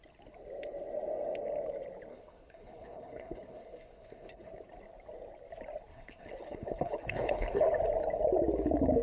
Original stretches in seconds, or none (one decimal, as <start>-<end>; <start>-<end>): 0.0-2.1; 4.5-5.9; 7.6-9.0